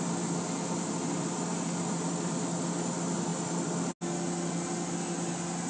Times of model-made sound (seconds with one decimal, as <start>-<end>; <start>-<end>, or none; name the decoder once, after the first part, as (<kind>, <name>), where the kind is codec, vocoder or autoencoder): none